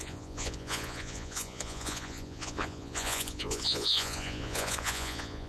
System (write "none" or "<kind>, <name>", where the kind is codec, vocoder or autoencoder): vocoder, Vocos